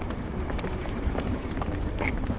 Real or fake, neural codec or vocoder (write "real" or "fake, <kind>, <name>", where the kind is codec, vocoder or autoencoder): fake, vocoder, BigVGAN v2